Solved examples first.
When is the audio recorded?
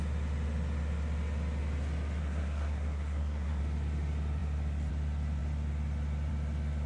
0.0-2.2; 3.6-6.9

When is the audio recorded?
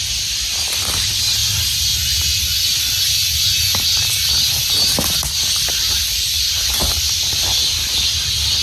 0.0-8.6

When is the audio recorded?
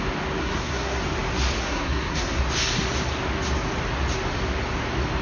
0.0-0.4; 1.0-1.6; 2.4-5.2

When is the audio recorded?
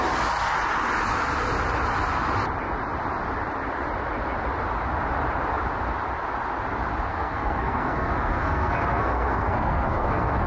0.0-7.1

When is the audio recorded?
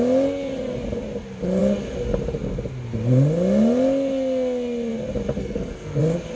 0.0-5.4; 6.0-6.4